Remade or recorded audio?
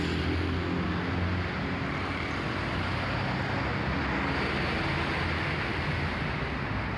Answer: recorded